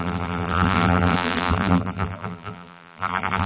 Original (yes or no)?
no